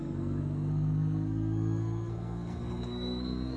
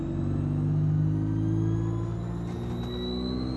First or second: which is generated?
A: first